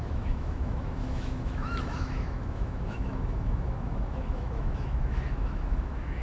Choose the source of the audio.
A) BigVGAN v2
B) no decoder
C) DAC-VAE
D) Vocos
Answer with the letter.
C